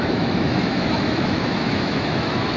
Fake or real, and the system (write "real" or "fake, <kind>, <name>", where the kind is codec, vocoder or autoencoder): fake, autoencoder, DAC-VAE